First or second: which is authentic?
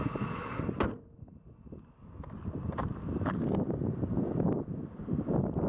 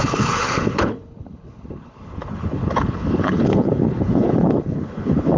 first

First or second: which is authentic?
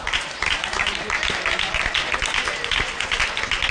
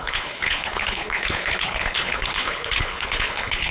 first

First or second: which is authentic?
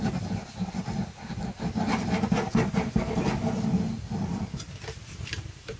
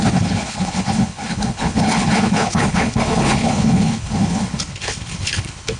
first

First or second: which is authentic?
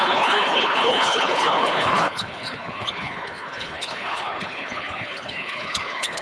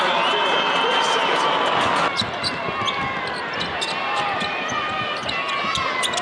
second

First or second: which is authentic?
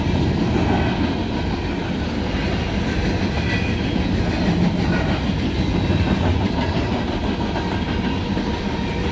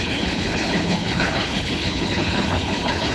first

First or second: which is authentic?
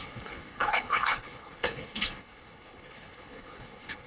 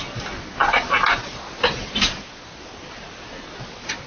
second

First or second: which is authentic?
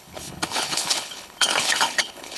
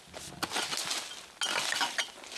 second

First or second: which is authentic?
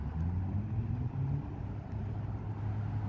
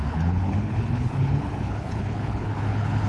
first